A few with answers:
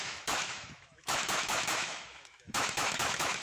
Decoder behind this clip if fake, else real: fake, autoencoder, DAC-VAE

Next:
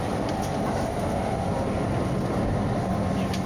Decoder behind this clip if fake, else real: real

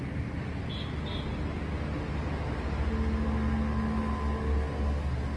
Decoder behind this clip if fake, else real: real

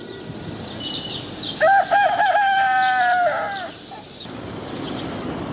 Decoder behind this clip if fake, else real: real